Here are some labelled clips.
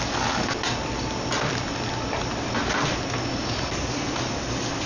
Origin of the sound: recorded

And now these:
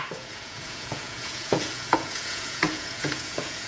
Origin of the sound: remade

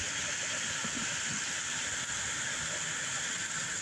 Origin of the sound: recorded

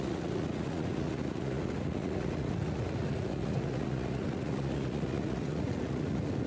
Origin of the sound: remade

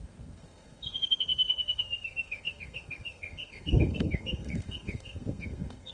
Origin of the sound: remade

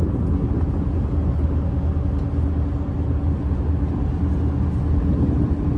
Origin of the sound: recorded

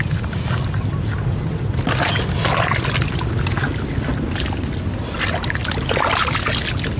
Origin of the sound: recorded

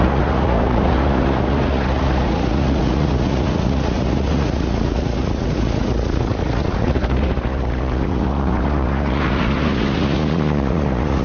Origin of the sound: remade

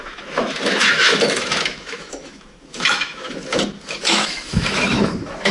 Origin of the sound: remade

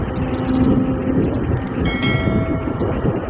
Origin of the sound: recorded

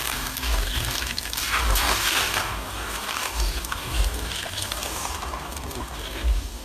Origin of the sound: remade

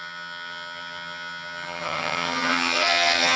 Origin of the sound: remade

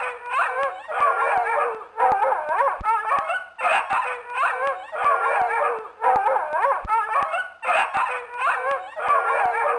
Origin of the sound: recorded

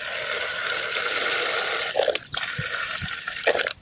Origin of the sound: recorded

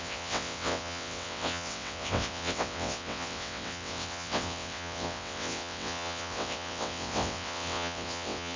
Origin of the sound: remade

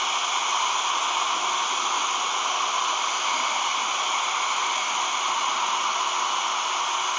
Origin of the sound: recorded